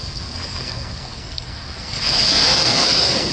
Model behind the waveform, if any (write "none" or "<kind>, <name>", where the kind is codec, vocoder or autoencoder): codec, SNAC